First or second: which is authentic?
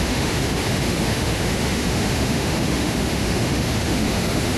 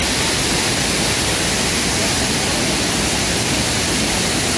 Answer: second